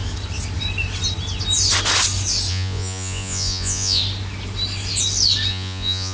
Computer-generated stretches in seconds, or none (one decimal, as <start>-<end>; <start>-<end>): 2.5-4.0; 5.5-6.1